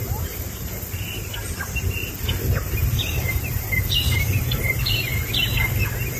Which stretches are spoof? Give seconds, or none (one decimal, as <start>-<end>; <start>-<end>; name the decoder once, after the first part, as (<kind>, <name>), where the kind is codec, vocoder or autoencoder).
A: 0.0-5.1 (vocoder, BigVGAN v2)